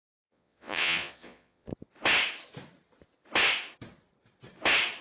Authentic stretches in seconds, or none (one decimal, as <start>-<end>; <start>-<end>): 1.7-5.0